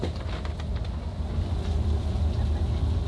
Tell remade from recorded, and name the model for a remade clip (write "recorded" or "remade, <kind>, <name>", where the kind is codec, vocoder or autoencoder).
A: recorded